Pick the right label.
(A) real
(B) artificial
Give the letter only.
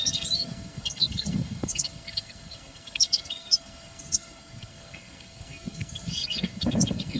B